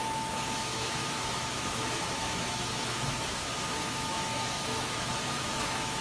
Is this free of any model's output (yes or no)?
no